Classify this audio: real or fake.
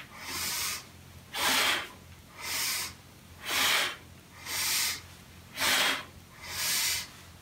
real